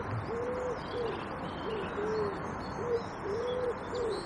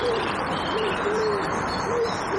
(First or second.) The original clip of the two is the first